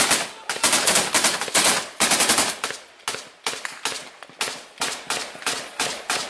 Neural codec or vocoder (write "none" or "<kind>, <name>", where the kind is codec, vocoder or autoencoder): none